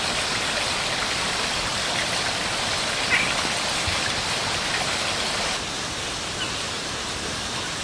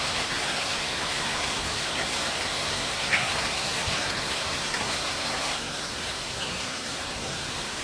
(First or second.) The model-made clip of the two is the second